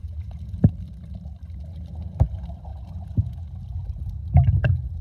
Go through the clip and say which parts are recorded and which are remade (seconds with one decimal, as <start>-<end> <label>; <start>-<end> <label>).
0.0-0.7 remade; 0.7-2.7 recorded; 2.7-3.4 remade; 3.4-5.0 recorded